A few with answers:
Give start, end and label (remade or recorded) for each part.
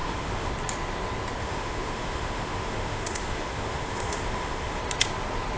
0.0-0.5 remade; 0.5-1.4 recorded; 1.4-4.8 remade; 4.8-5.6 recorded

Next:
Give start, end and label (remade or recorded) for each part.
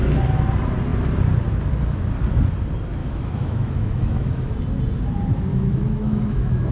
0.0-3.0 recorded; 3.0-4.5 remade; 4.5-5.5 recorded; 5.5-6.7 remade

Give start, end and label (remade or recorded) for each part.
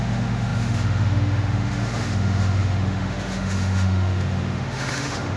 0.0-5.4 remade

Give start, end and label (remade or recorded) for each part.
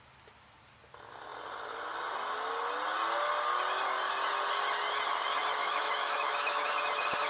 0.0-5.6 recorded; 5.6-6.7 remade; 6.7-7.3 recorded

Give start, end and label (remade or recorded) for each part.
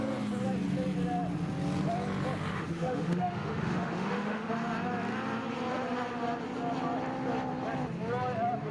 0.0-2.5 recorded; 2.5-4.5 remade; 4.5-8.7 recorded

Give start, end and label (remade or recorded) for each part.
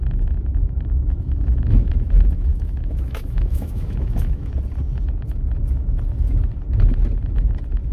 0.0-0.6 recorded; 0.6-1.9 remade; 1.9-2.5 recorded; 2.5-4.5 remade; 4.5-7.9 recorded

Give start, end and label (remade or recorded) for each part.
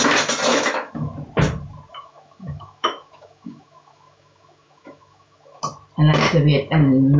0.0-0.5 recorded; 0.5-1.1 remade; 1.1-1.9 recorded; 1.9-5.6 remade; 5.6-7.2 recorded